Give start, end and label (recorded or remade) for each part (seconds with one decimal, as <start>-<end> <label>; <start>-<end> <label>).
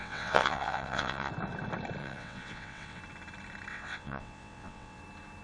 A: 0.0-1.3 remade; 1.3-2.0 recorded; 2.0-3.0 remade; 3.0-3.7 recorded; 3.7-5.0 remade; 5.0-5.4 recorded